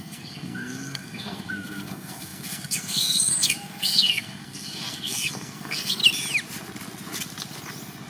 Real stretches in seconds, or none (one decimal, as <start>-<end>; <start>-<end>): 6.0-8.1